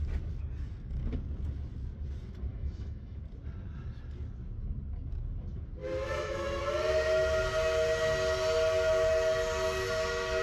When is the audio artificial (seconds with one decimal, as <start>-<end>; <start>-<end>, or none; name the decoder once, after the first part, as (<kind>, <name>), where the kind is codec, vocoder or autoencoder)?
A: 2.5-3.2 (autoencoder, DAC-VAE); 5.8-6.6